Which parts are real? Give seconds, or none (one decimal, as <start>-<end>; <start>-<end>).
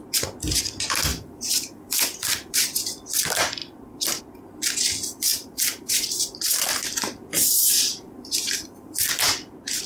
0.0-1.1; 2.8-3.6; 4.2-5.3; 6.2-7.3